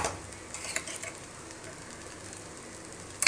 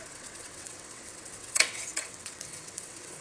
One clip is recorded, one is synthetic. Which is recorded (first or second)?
first